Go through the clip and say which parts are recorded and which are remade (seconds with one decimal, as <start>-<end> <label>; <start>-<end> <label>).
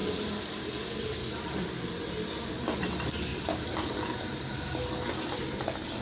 0.0-6.0 recorded